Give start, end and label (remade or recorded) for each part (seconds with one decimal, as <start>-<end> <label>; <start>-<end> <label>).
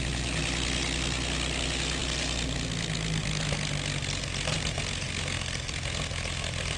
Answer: 0.0-6.8 recorded